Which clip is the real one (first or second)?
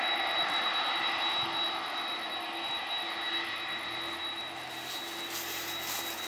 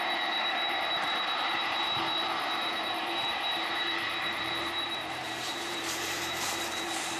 first